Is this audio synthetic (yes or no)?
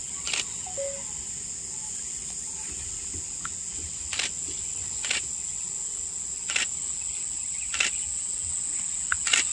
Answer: no